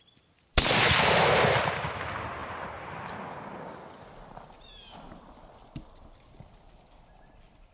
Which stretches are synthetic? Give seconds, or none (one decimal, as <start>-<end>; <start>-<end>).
none